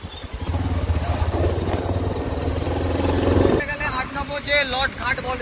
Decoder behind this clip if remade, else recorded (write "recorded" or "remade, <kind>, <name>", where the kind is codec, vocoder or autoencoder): recorded